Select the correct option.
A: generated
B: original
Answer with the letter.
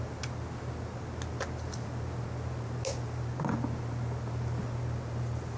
B